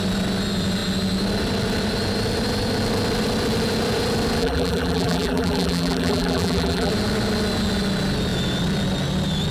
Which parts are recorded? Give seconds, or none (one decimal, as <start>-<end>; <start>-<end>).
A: 0.0-4.4; 6.9-9.5